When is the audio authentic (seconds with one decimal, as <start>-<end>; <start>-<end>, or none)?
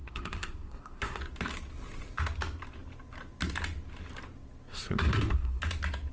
1.2-4.7; 5.6-6.1